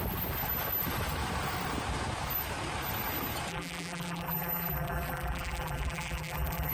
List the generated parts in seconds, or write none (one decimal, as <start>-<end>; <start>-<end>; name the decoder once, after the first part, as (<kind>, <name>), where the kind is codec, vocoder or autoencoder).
3.5-6.7 (vocoder, BigVGAN v2)